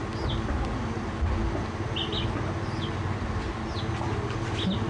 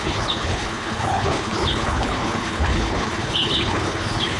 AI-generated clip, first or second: second